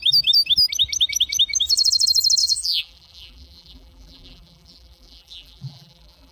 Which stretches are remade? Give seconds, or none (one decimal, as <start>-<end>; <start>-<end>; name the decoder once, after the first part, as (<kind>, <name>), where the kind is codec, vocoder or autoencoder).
2.4-6.3 (vocoder, BigVGAN v2)